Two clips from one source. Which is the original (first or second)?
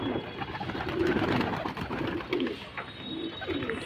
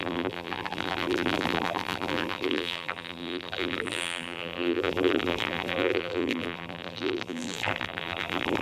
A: first